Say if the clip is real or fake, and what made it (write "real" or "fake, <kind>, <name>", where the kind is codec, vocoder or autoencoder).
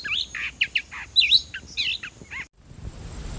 real